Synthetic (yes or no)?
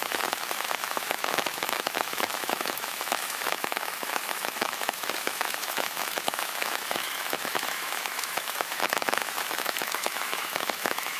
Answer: yes